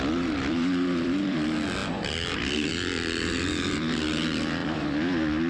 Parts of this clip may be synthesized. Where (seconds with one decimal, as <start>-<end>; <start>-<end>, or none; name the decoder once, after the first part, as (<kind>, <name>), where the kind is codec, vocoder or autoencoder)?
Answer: 0.0-5.5 (vocoder, BigVGAN v2)